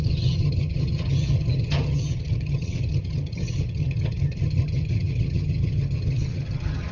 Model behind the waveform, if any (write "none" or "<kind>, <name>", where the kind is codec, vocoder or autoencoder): vocoder, HiFi-GAN